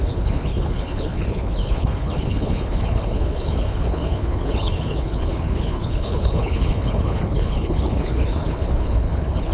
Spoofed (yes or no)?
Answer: yes